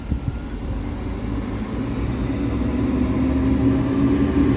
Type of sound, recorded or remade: recorded